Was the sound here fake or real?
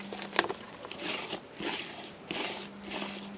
real